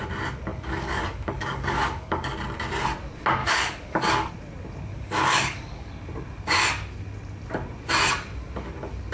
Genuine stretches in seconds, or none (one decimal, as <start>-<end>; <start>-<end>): 0.0-0.5; 2.3-3.4; 4.3-4.9; 5.9-9.1